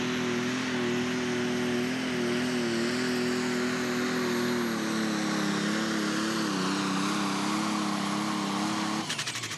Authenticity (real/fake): real